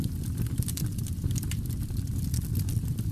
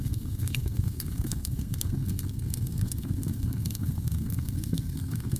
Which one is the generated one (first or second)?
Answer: second